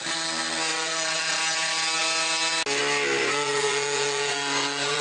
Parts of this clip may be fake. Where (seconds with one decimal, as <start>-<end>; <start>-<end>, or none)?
0.7-1.3; 3.2-5.0

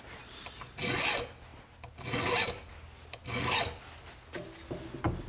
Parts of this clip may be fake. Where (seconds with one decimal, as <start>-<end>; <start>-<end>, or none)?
none